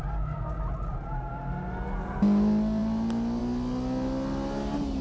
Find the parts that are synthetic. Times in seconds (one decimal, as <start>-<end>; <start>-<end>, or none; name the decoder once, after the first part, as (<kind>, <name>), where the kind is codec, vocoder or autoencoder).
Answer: none